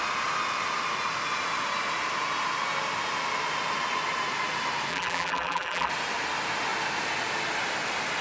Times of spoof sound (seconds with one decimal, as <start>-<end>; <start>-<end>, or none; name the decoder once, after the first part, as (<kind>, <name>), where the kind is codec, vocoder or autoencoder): 4.9-5.9 (vocoder, BigVGAN v2)